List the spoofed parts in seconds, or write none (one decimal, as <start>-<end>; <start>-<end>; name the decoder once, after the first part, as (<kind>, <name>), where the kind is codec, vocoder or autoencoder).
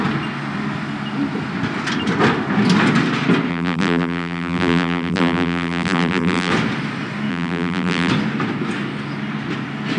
3.5-6.5 (vocoder, BigVGAN v2); 7.3-8.1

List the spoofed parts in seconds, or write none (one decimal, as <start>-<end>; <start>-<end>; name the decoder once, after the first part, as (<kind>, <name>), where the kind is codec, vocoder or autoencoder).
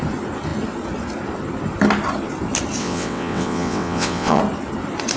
2.8-4.4 (vocoder, WaveNeXt)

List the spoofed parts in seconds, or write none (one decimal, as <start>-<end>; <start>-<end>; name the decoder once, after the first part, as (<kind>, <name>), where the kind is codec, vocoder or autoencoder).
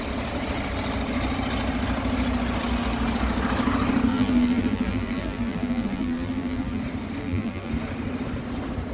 4.1-6.8 (vocoder, BigVGAN v2); 7.2-7.7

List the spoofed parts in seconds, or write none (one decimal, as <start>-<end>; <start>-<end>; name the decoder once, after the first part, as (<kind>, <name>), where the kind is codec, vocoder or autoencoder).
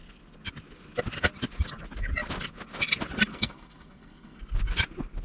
3.3-4.4 (codec, SNAC)